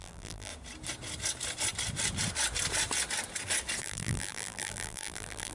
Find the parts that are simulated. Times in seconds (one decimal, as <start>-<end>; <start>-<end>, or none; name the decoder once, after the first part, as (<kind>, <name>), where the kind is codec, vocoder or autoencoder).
0.0-0.5 (vocoder, BigVGAN v2); 3.8-5.5